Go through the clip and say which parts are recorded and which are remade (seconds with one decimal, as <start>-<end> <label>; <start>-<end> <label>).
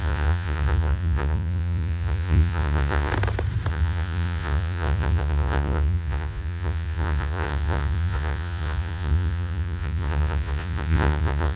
0.0-3.1 remade; 3.1-3.7 recorded; 3.7-11.6 remade